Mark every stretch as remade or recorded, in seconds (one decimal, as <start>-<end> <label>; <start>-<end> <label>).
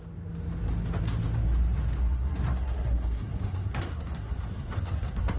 0.0-2.0 recorded; 2.0-5.4 remade